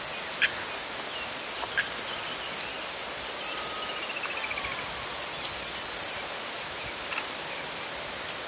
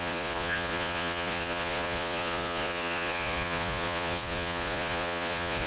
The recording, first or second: first